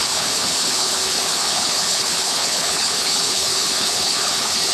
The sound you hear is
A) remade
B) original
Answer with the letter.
A